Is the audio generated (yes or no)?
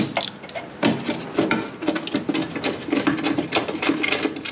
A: no